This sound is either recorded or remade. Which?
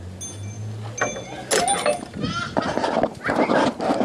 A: recorded